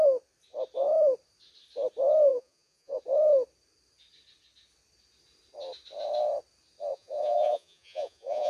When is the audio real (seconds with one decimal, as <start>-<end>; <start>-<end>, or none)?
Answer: 0.0-2.3; 3.0-6.9